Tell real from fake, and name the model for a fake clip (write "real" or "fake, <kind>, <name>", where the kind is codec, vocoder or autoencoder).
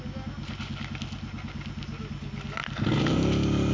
real